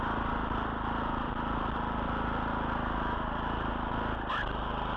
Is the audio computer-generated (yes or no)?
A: no